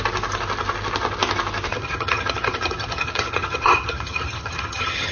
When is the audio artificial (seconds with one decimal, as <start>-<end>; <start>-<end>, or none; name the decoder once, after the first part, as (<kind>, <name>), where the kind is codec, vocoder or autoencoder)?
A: 1.7-5.1 (vocoder, HiFi-GAN)